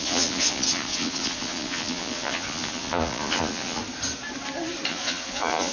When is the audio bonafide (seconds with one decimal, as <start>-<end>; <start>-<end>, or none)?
3.8-4.9

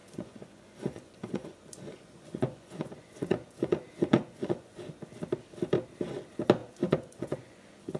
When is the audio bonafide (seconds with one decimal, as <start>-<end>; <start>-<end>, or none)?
4.8-6.6

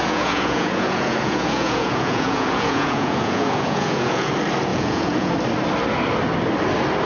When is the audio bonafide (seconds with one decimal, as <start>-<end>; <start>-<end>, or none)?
4.3-4.7; 5.3-7.1

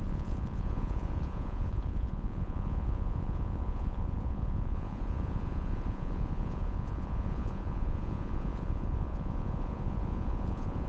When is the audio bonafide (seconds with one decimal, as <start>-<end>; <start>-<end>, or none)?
none